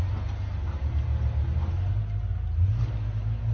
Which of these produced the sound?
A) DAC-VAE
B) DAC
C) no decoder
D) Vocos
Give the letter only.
C